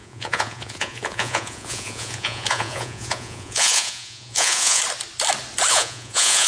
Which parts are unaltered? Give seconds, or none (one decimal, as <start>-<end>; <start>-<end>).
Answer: 4.8-5.7